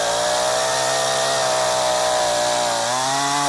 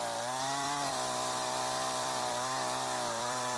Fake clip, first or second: second